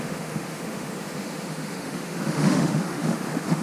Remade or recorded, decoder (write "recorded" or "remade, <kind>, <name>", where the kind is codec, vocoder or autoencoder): remade, autoencoder, DAC-VAE